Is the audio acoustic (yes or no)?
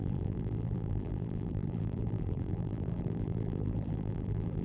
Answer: no